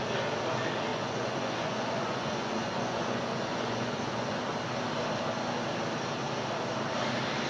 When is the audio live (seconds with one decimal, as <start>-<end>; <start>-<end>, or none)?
0.0-0.9; 4.4-7.5